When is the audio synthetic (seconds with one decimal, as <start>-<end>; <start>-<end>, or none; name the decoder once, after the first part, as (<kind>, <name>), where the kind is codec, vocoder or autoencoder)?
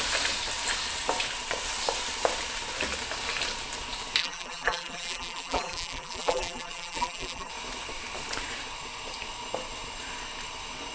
4.2-7.5 (vocoder, BigVGAN v2)